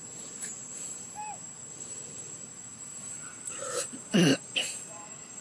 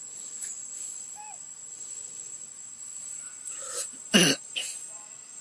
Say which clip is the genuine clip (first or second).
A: second